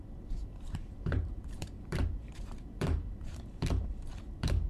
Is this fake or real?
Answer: fake